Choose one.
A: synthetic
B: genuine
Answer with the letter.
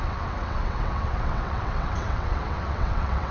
A